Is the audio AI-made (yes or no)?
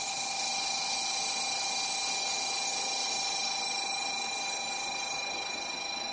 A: no